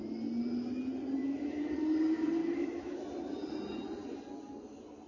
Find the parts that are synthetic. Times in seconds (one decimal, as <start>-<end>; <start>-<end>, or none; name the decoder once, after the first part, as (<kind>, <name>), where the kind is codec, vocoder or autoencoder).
1.2-1.7 (autoencoder, DAC-VAE); 2.4-3.0